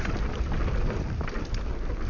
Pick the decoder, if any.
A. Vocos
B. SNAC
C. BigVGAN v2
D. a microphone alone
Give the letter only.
D